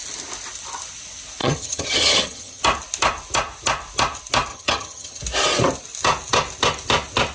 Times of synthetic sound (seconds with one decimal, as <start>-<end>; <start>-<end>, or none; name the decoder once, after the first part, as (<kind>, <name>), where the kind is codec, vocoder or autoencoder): 1.4-2.6 (vocoder, HiFi-GAN); 4.5-5.2